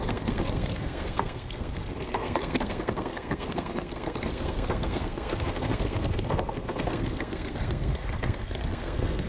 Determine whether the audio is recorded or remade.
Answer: remade